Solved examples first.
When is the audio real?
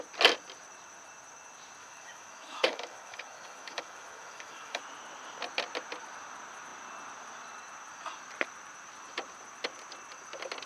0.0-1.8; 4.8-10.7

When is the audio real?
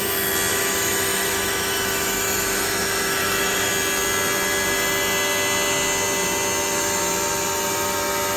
0.0-0.5; 3.7-8.4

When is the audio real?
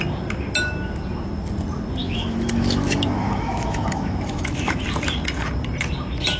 0.0-2.0; 4.8-6.4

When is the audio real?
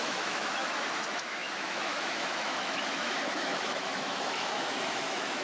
none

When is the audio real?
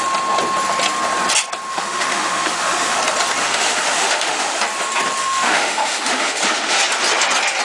0.0-1.7; 3.0-3.4; 4.6-5.2; 6.8-7.6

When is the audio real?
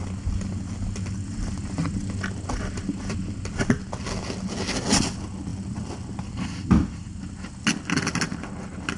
0.0-9.0